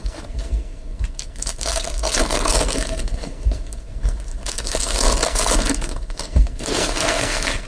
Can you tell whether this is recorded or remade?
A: remade